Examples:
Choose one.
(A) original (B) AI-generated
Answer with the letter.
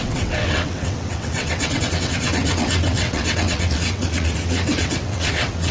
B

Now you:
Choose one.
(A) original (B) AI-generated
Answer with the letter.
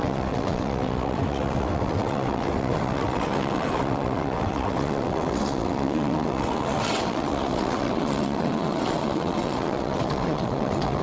B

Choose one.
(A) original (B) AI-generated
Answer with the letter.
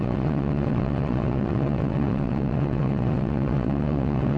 B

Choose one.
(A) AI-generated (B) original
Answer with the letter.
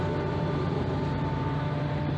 B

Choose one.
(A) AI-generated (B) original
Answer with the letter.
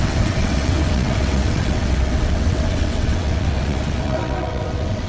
A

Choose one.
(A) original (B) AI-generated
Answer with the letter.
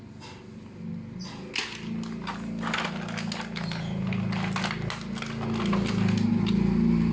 A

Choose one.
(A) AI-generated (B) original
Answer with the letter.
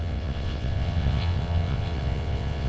A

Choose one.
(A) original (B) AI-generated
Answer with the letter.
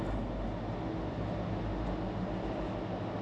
A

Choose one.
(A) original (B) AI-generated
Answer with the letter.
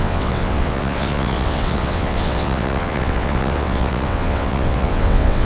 B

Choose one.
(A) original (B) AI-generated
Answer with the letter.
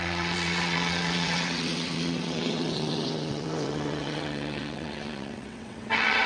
B